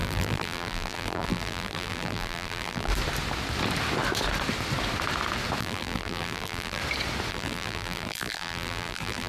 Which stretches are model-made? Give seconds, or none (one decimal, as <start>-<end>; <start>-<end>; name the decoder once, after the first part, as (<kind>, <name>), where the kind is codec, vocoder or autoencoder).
0.0-2.9 (vocoder, BigVGAN v2); 5.6-6.8; 7.3-9.3